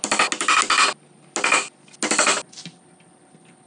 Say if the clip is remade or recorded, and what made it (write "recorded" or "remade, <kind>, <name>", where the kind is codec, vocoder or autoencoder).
recorded